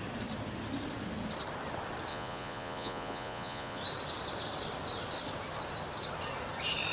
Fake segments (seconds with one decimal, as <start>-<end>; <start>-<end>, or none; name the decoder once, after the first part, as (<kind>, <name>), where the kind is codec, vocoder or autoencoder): 2.1-3.8 (vocoder, Vocos)